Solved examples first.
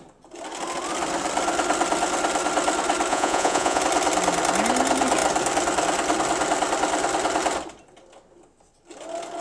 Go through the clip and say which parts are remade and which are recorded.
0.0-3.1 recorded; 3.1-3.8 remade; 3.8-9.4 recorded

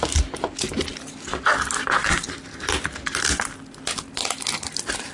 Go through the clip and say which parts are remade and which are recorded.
0.0-5.1 recorded

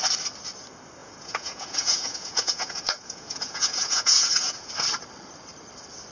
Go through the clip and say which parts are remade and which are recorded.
0.0-1.0 recorded; 1.0-4.7 remade; 4.7-6.1 recorded

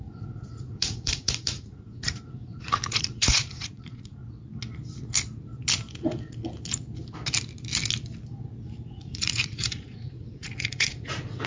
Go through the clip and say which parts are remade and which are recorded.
0.0-4.2 remade; 4.2-8.9 recorded; 8.9-11.5 remade

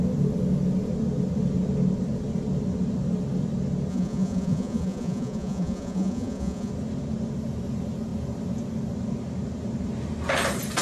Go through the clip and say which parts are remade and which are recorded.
0.0-3.9 recorded; 3.9-6.7 remade; 6.7-10.8 recorded

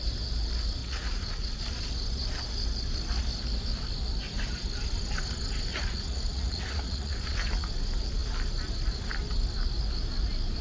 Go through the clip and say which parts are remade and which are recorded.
0.0-0.8 recorded; 0.8-1.6 remade; 1.6-5.7 recorded; 5.7-7.7 remade; 7.7-10.6 recorded

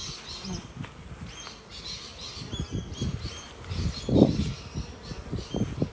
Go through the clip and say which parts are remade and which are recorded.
0.0-5.9 recorded

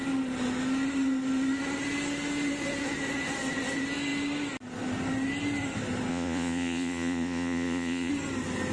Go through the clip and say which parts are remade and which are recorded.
0.0-6.1 recorded; 6.1-8.1 remade; 8.1-8.7 recorded